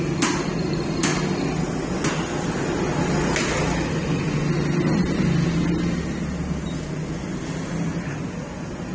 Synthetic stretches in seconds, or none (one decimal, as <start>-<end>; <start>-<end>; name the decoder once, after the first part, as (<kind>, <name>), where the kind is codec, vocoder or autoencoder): none